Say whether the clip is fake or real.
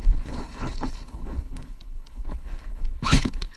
fake